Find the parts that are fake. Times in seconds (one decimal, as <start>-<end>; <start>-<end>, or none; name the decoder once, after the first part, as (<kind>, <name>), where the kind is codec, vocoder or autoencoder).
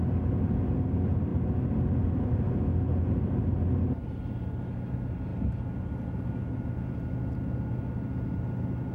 none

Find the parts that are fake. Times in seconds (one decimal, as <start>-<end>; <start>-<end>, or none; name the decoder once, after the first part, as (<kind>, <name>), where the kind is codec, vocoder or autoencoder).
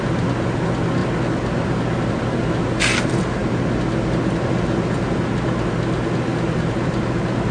none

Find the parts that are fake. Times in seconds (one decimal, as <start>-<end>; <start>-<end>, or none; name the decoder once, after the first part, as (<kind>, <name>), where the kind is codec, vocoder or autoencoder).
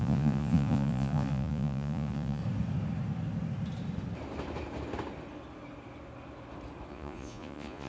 0.0-2.4 (vocoder, Vocos); 6.9-7.9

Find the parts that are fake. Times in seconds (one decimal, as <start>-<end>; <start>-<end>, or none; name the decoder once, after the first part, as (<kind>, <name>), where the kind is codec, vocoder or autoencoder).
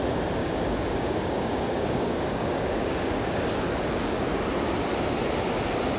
0.4-3.4 (codec, DAC)